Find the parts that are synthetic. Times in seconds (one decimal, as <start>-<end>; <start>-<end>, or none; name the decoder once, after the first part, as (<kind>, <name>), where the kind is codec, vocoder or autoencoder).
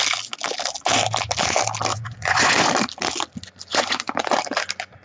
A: 1.9-2.7 (vocoder, Vocos); 3.7-4.3